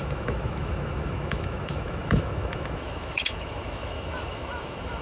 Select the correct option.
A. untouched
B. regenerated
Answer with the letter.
B